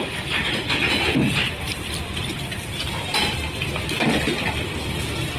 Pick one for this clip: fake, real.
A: real